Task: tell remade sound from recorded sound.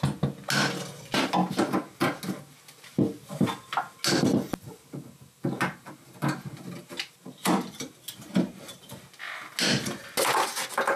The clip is recorded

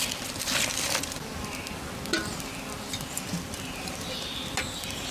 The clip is recorded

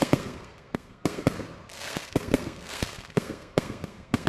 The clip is remade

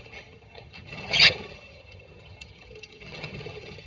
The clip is remade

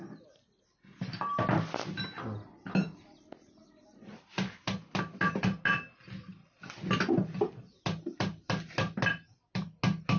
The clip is recorded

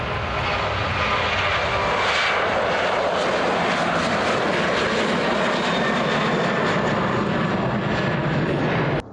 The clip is recorded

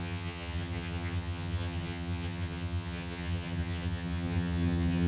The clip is remade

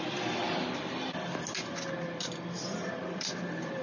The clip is recorded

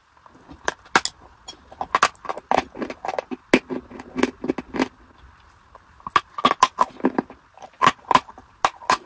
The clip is recorded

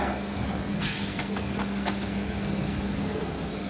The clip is remade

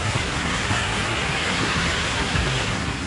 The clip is remade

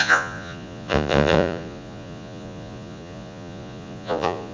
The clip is remade